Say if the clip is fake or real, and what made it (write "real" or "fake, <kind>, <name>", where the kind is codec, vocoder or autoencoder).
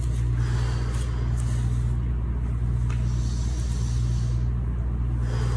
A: real